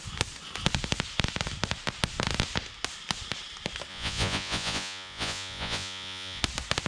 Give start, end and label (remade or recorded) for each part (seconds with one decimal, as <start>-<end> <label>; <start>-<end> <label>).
0.0-3.9 recorded; 3.9-6.4 remade; 6.4-6.9 recorded